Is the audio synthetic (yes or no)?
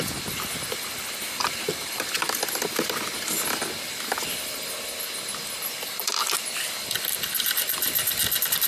no